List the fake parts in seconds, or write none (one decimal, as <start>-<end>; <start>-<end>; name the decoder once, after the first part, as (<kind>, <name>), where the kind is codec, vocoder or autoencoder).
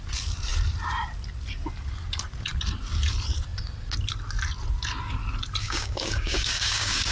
5.6-7.1 (codec, DAC)